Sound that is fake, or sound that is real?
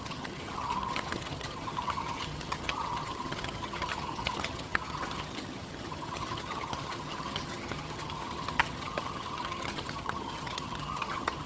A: fake